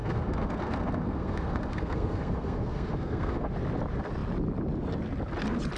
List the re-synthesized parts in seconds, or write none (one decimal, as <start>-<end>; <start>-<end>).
0.0-3.5